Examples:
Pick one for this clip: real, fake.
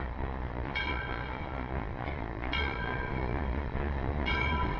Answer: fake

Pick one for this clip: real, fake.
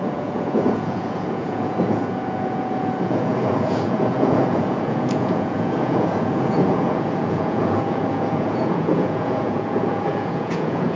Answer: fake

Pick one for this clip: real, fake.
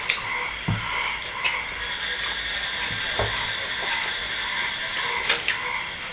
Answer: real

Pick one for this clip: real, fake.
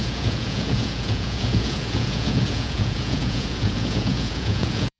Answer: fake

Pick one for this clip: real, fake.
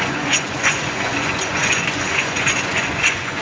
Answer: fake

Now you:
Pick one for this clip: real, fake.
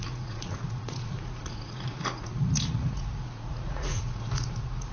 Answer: fake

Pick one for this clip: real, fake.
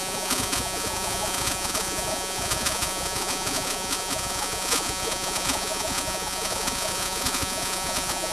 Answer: fake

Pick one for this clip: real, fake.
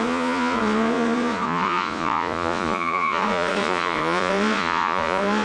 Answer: fake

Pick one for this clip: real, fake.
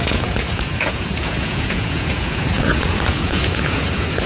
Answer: fake